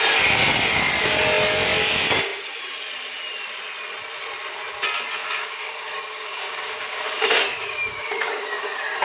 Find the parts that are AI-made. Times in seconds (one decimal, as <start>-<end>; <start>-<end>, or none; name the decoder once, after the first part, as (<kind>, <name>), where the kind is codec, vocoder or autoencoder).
5.2-9.0 (codec, DAC)